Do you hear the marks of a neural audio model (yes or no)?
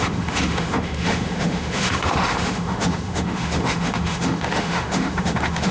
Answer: yes